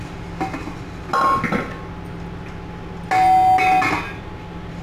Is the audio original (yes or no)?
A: yes